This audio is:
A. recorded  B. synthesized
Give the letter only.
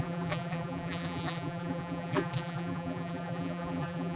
B